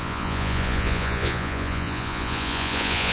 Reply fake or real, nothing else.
fake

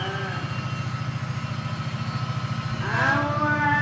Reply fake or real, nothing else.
real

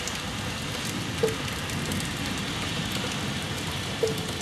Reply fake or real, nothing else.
real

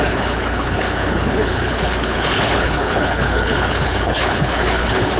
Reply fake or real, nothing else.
fake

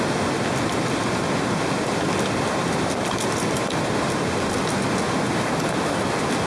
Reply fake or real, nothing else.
fake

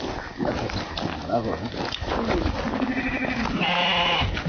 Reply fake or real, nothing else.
real